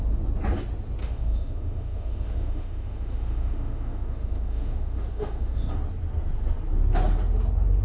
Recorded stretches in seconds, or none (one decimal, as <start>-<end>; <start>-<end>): 0.0-1.0; 5.7-7.8